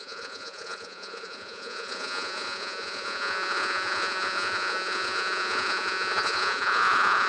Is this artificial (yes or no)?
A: yes